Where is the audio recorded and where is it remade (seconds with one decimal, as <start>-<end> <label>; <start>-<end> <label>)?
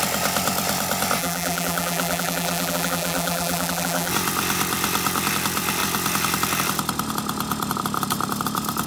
0.0-1.2 recorded; 1.2-4.1 remade; 4.1-8.9 recorded